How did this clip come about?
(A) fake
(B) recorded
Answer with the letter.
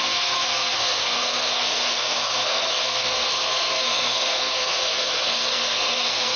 A